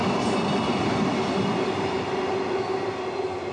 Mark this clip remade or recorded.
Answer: recorded